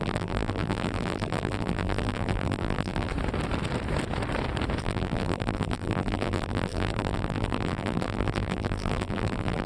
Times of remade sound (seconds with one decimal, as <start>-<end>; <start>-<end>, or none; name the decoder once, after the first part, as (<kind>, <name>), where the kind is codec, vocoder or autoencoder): 0.0-3.1 (vocoder, BigVGAN v2); 4.8-9.7